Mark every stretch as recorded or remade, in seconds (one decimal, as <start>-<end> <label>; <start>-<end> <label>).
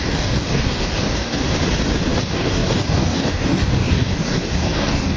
0.0-1.4 remade; 1.4-2.2 recorded; 2.2-5.2 remade